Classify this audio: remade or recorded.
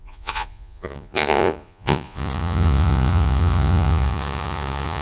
remade